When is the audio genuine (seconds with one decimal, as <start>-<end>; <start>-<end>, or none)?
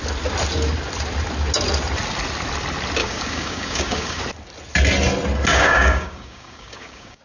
0.0-3.0; 4.2-5.5